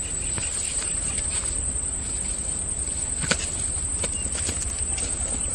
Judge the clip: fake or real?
real